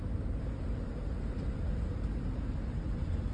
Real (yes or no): no